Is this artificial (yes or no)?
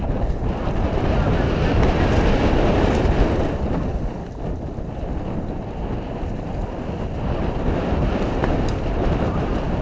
no